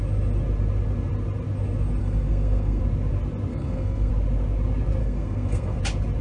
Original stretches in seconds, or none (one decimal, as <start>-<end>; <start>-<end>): 0.0-2.0; 2.8-3.5; 4.1-5.0; 5.8-6.2